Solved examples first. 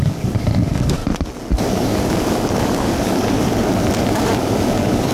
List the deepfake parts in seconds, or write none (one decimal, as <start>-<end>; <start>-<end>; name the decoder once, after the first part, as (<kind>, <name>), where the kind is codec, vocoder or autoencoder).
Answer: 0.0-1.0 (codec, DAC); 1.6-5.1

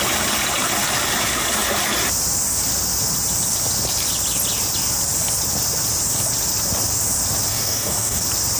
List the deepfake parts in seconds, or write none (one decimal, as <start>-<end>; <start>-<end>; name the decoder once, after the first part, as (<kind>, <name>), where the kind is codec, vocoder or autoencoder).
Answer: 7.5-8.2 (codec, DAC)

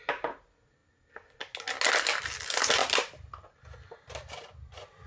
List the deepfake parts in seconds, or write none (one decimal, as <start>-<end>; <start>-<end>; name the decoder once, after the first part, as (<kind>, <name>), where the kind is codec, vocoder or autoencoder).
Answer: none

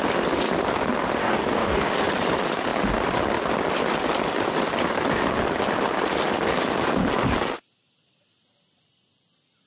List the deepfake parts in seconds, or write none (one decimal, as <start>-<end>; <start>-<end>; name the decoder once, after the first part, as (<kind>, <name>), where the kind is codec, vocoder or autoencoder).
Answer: 1.2-1.9 (codec, DAC)